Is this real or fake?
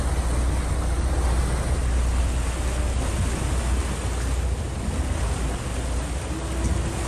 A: real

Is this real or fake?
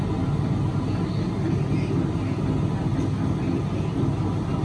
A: real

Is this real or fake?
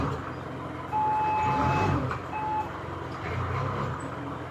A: real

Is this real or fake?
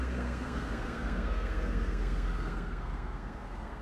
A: fake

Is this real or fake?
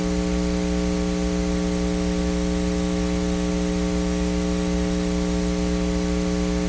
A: real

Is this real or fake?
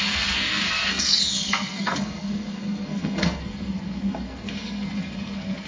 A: fake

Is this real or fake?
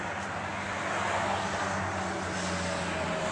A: real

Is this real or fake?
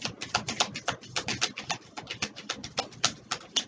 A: real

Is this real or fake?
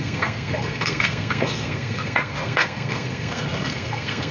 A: fake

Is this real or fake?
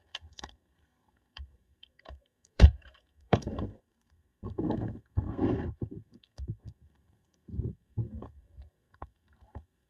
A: fake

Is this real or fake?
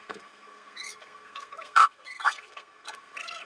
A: fake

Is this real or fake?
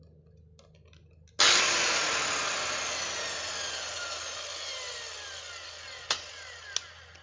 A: real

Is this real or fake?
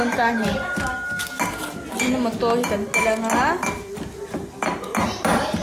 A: real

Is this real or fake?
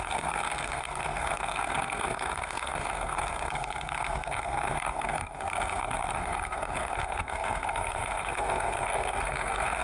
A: fake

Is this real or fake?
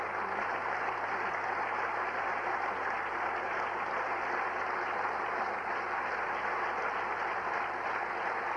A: real